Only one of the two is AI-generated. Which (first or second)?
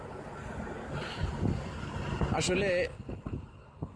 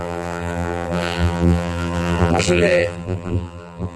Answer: second